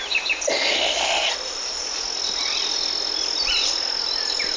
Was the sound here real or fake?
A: real